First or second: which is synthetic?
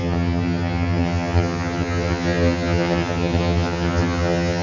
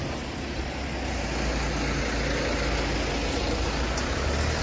first